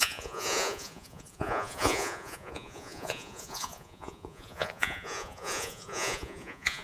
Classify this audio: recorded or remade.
remade